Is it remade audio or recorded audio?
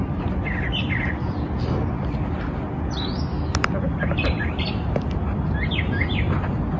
recorded